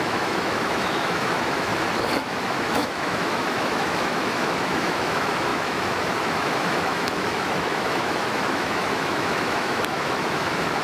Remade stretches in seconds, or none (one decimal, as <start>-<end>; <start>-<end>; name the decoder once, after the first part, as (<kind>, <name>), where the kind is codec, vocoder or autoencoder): 0.0-1.7 (autoencoder, DAC-VAE); 2.2-10.8